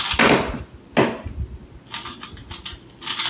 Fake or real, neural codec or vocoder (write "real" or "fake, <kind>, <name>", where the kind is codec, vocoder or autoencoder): real